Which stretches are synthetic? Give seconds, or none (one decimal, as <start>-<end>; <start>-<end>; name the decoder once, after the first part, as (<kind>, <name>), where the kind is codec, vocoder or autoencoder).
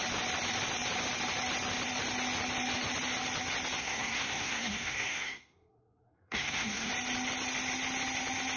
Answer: 3.8-6.9 (codec, SNAC)